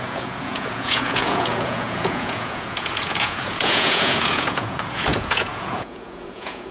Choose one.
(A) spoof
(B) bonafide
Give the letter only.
A